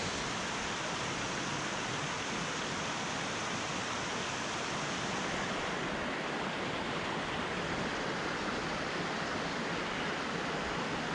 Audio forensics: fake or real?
real